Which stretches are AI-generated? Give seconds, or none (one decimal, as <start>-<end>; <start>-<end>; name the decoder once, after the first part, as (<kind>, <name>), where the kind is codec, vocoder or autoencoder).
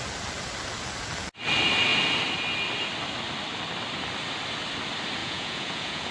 5.2-6.1 (vocoder, Vocos)